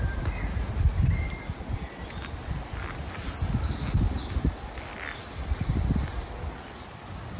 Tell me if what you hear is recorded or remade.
recorded